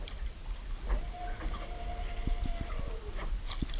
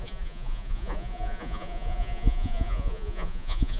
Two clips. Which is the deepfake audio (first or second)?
second